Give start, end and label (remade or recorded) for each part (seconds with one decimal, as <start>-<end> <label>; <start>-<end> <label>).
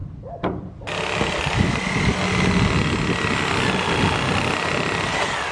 0.0-5.5 recorded